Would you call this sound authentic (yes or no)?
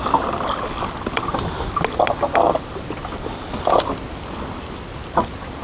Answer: yes